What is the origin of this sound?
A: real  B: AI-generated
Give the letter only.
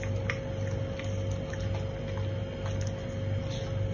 A